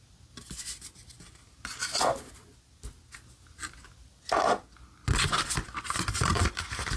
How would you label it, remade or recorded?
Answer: recorded